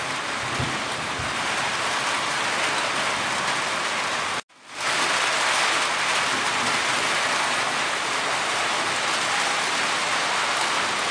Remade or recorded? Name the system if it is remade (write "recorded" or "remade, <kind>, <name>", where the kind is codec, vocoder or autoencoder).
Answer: recorded